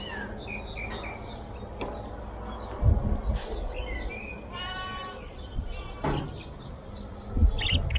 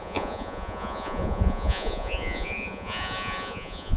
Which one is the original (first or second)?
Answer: first